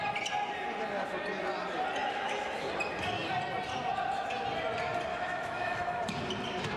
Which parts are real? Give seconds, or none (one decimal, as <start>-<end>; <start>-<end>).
0.0-2.0; 2.7-5.1; 6.0-6.8